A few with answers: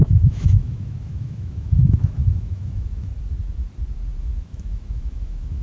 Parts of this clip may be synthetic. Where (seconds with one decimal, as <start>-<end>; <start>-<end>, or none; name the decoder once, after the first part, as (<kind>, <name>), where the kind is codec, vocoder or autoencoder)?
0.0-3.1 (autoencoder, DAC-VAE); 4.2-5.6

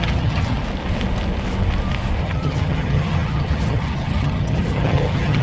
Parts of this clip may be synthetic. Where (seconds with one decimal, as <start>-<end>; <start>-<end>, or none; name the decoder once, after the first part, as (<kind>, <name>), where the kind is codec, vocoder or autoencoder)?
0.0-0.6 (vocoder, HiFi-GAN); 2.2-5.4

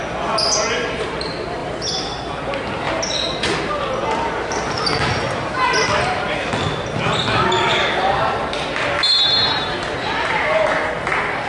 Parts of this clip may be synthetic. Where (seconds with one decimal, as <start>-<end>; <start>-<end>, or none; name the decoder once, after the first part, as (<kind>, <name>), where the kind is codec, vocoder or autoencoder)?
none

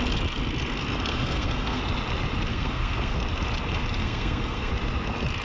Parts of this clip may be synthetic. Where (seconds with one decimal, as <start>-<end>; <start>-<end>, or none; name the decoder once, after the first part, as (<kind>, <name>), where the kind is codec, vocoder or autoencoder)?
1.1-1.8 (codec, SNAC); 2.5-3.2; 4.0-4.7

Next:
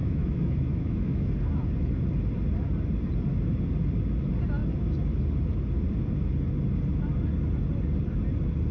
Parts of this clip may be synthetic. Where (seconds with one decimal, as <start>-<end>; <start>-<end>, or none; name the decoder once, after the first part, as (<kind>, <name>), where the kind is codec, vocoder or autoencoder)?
0.0-1.3 (autoencoder, DAC-VAE)

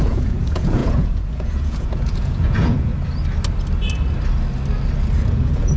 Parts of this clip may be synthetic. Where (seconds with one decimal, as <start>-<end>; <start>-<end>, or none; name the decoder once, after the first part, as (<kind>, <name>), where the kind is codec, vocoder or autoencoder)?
0.0-2.9 (vocoder, Vocos); 5.2-5.8